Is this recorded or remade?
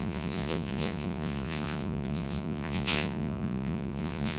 remade